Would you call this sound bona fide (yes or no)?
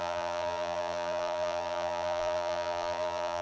no